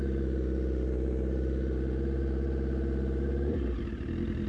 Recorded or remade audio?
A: recorded